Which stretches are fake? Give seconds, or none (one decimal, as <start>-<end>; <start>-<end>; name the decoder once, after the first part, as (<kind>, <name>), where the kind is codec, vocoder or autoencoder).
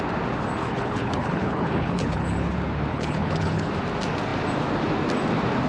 0.6-2.5 (codec, HILCodec); 2.9-3.7